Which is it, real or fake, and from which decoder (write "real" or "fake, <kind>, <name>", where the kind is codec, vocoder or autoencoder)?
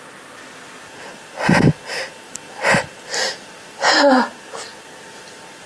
real